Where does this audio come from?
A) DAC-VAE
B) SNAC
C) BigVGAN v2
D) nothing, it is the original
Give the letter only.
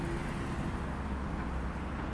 D